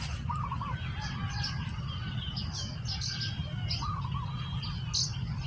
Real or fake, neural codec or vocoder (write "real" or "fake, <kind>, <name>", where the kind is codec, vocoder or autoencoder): real